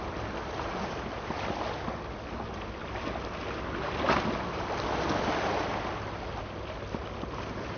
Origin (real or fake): real